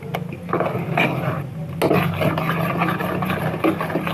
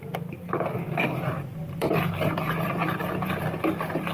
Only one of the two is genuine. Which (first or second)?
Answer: first